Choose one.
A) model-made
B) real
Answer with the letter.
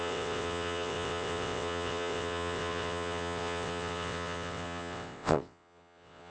A